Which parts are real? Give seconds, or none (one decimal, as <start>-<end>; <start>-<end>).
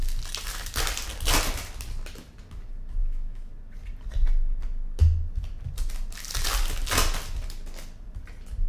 0.0-3.0; 3.5-8.7